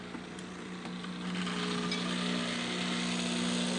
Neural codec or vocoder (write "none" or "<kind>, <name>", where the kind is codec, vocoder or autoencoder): none